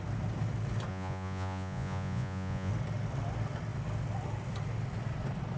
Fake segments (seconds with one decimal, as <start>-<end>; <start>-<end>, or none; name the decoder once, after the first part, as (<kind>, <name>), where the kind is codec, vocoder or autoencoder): 0.9-2.7 (vocoder, Vocos)